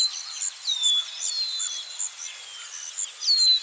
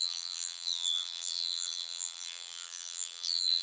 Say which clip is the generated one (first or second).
second